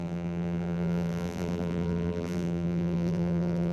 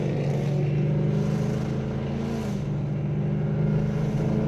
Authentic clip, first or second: second